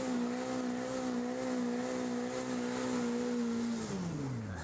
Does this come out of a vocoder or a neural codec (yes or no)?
no